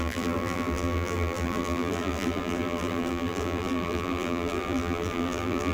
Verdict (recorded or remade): remade